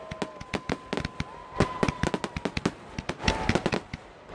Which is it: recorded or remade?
recorded